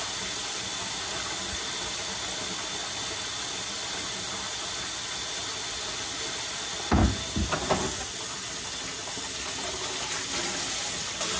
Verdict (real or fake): real